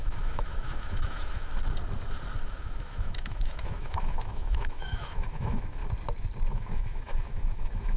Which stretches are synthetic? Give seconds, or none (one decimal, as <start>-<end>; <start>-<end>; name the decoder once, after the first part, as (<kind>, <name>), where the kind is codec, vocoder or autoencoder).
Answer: 0.0-1.5 (autoencoder, DAC-VAE); 2.5-5.8; 6.5-8.0